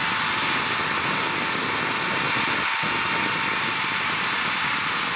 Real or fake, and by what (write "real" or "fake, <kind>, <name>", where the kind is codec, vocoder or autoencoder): real